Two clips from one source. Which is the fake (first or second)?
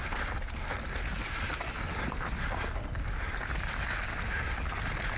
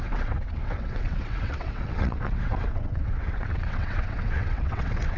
second